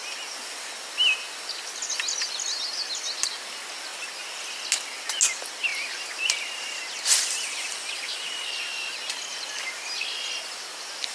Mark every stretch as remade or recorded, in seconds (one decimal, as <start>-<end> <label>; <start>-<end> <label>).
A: 0.0-11.1 recorded